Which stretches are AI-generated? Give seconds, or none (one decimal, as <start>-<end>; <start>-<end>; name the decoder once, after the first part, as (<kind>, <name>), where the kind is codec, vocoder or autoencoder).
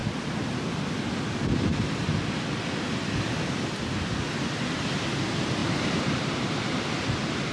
5.6-6.8 (vocoder, BigVGAN v2)